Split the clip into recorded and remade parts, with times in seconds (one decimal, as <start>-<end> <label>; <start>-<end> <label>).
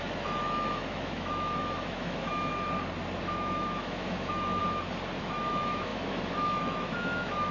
0.0-2.5 remade; 2.5-3.2 recorded; 3.2-4.6 remade; 4.6-5.2 recorded; 5.2-7.5 remade